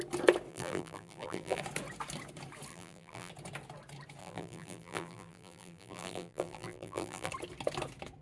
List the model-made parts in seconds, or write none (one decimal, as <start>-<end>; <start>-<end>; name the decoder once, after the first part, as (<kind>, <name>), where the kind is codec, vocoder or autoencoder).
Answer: 0.5-1.6 (vocoder, BigVGAN v2); 2.7-3.3; 4.2-7.3